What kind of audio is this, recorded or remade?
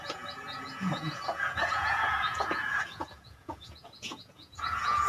remade